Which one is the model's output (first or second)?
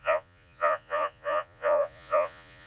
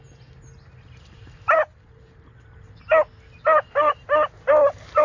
first